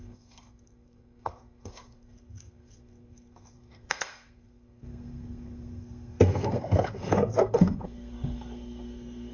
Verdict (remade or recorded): remade